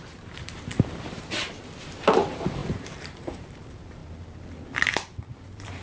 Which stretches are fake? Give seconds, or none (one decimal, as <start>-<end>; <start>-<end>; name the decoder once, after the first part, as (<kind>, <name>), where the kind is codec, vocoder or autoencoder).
0.0-4.0 (vocoder, BigVGAN v2); 4.5-5.8